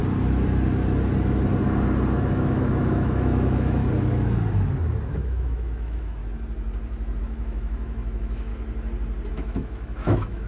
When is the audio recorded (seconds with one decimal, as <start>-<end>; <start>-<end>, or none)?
0.0-2.2; 3.8-5.1; 6.2-7.2; 8.5-9.3

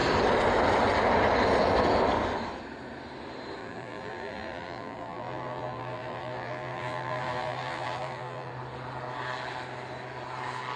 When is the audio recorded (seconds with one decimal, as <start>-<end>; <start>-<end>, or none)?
0.0-3.6; 8.5-10.8

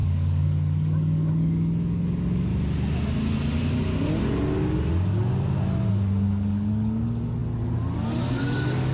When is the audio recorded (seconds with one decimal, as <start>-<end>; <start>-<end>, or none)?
2.5-5.9; 7.4-8.3

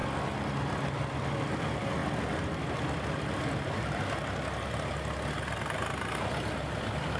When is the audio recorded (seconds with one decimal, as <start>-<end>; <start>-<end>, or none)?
0.0-7.2

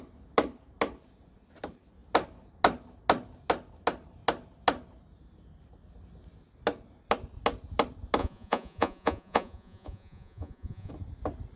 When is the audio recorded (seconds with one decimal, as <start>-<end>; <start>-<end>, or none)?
0.0-8.2; 10.9-11.6